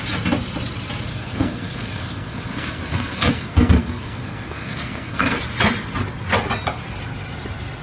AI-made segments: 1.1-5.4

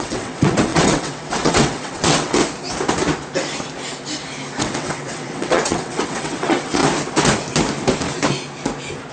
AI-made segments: 0.0-2.4; 4.6-6.8

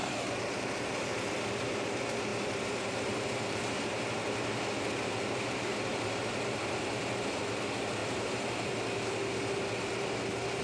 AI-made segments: 0.0-0.7; 2.3-4.2; 5.7-7.0; 8.0-8.7

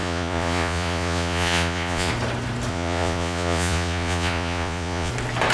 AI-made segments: 0.0-2.1; 2.7-5.1

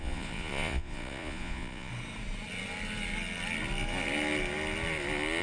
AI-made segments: 0.0-1.9

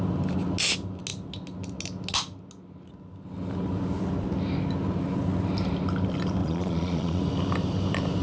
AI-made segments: 6.4-7.2

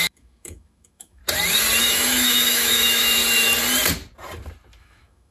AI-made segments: 0.0-1.2; 1.8-3.2; 4.8-5.3